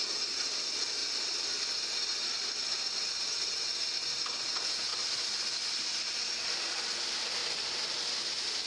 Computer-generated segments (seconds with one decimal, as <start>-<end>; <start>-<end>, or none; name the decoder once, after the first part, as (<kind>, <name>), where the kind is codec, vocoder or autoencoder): 1.0-1.7 (vocoder, BigVGAN v2); 4.9-6.0